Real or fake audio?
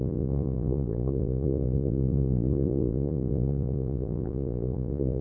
fake